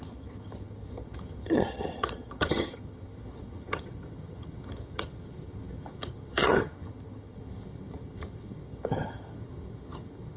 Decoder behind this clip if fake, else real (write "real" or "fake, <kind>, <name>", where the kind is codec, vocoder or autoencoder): fake, vocoder, HiFi-GAN